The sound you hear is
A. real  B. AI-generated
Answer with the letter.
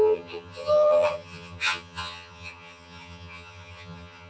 B